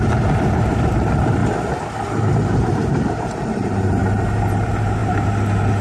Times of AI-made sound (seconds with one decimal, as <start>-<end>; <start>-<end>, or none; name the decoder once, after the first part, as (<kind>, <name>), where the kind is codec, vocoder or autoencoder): 0.0-1.4 (vocoder, BigVGAN v2); 2.3-4.0; 4.5-5.0